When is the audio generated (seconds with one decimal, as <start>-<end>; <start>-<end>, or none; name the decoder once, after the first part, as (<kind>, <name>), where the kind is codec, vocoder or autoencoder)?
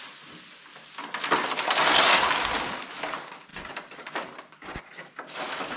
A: 3.5-4.8 (vocoder, BigVGAN v2)